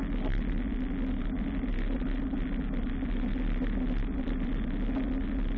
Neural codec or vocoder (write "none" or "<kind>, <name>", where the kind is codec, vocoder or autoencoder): none